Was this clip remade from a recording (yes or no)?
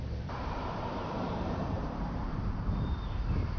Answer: yes